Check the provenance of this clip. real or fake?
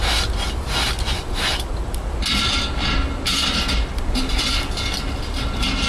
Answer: fake